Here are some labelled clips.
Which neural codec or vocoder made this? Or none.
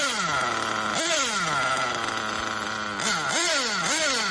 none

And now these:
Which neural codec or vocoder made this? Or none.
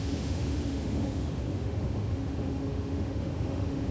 autoencoder, DAC-VAE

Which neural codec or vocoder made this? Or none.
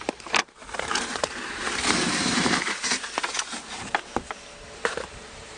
vocoder, BigVGAN v2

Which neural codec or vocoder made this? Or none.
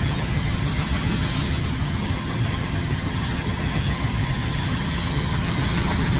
vocoder, HiFi-GAN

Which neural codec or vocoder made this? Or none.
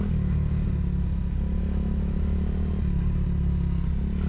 none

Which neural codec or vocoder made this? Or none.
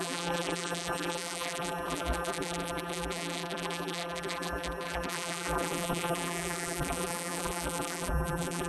vocoder, BigVGAN v2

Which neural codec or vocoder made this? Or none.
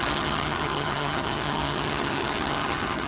vocoder, HiFi-GAN